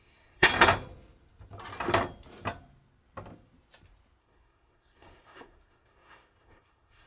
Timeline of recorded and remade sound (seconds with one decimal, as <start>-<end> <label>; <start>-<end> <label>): 0.0-0.5 remade; 0.5-4.2 recorded; 4.2-7.1 remade